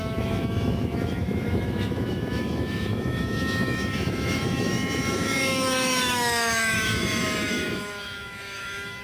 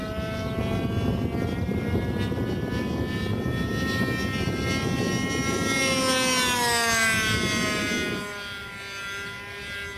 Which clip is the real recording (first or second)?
second